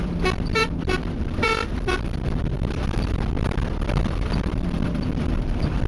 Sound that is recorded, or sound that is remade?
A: remade